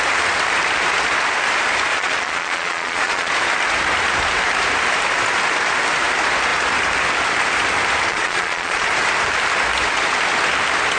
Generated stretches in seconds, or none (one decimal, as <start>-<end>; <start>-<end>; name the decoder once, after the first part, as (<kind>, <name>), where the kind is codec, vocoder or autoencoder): 1.9-3.3 (vocoder, Vocos); 8.1-8.9